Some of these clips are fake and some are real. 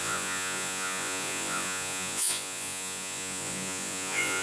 fake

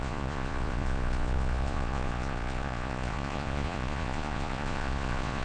fake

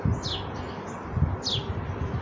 real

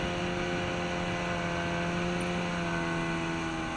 real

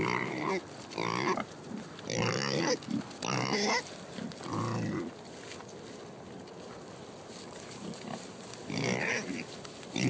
real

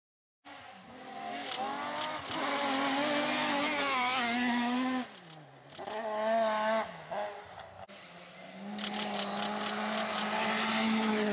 real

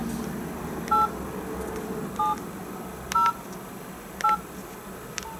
real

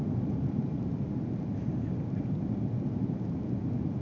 real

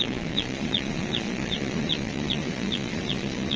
fake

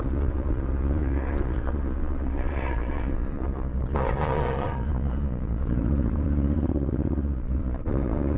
fake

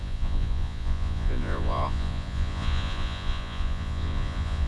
fake